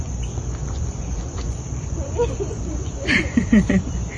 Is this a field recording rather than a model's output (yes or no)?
no